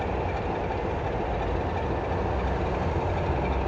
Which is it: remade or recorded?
recorded